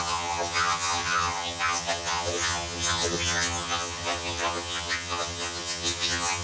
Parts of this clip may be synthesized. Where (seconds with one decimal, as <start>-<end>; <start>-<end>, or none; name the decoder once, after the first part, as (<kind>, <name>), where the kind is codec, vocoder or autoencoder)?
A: 0.0-6.4 (vocoder, HiFi-GAN)

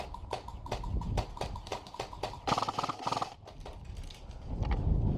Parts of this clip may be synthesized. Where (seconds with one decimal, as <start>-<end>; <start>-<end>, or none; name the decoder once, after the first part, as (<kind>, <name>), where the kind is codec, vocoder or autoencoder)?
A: none

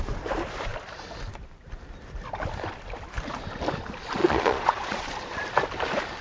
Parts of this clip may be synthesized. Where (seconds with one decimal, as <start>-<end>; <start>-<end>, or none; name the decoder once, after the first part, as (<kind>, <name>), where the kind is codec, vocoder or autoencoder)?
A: 4.2-5.0 (vocoder, Vocos)

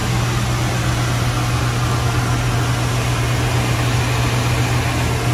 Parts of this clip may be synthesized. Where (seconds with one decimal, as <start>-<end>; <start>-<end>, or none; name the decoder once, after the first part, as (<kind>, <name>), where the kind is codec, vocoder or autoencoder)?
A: none

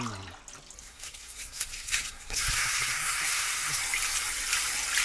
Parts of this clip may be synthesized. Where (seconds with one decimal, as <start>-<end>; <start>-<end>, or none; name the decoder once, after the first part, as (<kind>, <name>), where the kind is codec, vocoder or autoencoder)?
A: 0.8-3.8 (codec, SNAC)

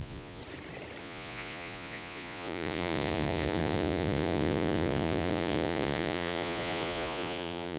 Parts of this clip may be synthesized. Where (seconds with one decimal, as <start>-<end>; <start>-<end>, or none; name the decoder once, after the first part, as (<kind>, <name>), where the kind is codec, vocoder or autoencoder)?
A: 0.0-0.4 (vocoder, Vocos); 1.0-7.8